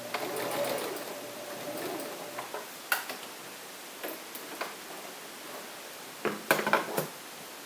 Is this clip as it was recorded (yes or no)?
yes